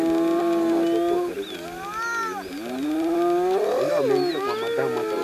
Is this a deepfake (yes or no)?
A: no